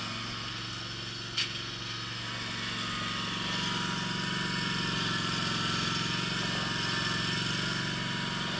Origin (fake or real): real